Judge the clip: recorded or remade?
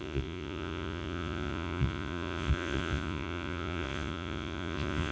remade